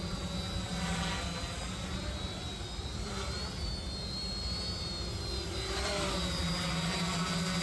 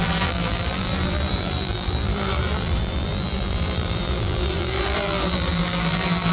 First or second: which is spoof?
second